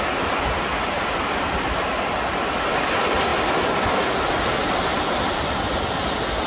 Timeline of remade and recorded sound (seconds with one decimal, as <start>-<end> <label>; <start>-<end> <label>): 0.0-6.5 recorded